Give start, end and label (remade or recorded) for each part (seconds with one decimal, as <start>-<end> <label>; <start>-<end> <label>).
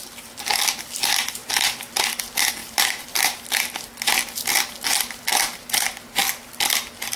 0.0-2.6 recorded; 2.6-3.5 remade; 3.5-5.3 recorded; 5.3-5.9 remade; 5.9-7.2 recorded